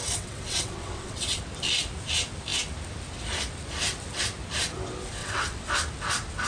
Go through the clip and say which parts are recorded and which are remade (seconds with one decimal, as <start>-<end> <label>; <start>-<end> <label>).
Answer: 0.0-1.4 remade; 1.4-5.2 recorded; 5.2-5.7 remade; 5.7-6.5 recorded